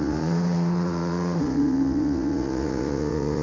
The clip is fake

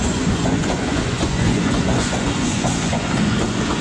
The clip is fake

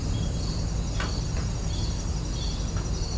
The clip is real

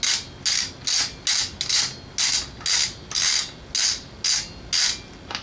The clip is real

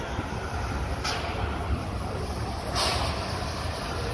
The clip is real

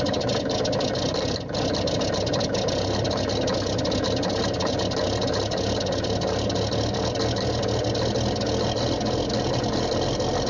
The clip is real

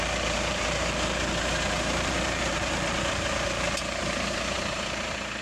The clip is fake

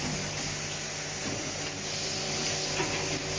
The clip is real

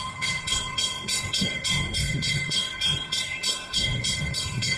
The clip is fake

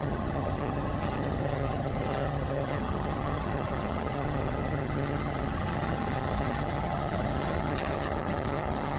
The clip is fake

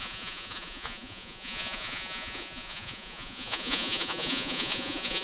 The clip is fake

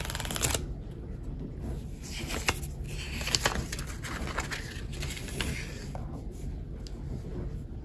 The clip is real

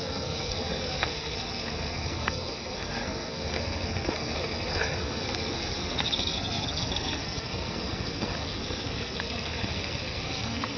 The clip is fake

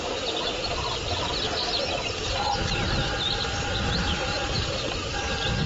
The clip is real